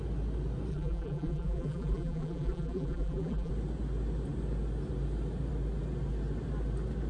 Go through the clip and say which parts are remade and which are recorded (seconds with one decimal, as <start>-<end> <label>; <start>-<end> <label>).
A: 0.0-0.7 recorded; 0.7-3.5 remade; 3.5-7.1 recorded

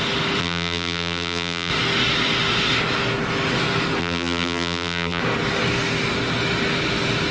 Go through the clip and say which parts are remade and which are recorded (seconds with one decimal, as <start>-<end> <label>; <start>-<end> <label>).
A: 0.0-0.4 recorded; 0.4-1.7 remade; 1.7-4.0 recorded; 4.0-5.2 remade; 5.2-7.3 recorded

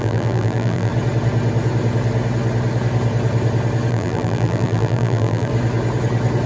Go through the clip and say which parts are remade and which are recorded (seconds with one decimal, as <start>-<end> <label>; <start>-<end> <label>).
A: 0.0-0.9 remade; 0.9-3.9 recorded; 3.9-5.5 remade; 5.5-6.5 recorded

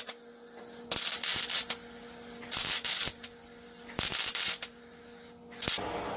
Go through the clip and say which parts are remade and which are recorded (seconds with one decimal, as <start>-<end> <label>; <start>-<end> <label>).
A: 0.0-1.3 recorded; 1.3-5.0 remade; 5.0-6.2 recorded